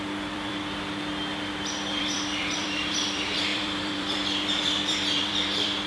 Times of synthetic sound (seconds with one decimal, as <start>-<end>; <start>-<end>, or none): 0.0-0.5; 2.0-5.9